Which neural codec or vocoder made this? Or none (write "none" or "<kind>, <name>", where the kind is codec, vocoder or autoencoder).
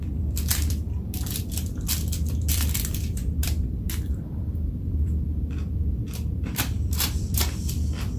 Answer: vocoder, BigVGAN v2